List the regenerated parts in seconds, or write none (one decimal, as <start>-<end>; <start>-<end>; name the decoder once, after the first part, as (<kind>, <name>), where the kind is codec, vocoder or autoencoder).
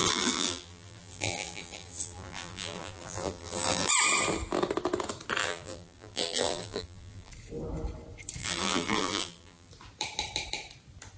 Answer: 0.0-3.9 (vocoder, BigVGAN v2); 5.4-7.3; 8.4-9.7